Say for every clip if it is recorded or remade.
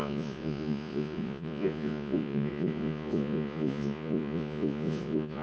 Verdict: remade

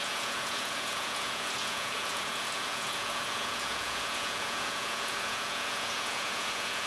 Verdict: remade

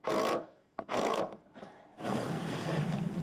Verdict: remade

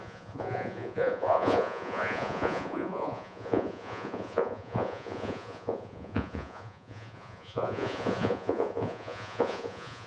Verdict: remade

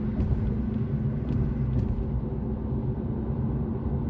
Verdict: recorded